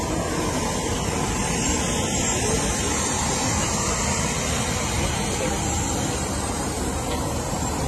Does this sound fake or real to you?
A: real